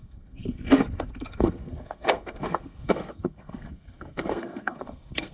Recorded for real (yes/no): no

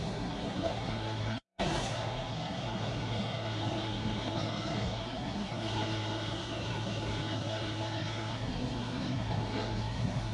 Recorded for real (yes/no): no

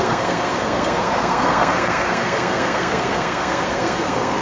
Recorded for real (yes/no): no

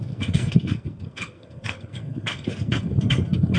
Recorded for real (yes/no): no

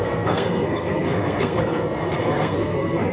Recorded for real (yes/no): no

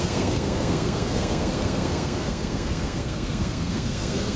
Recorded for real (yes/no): no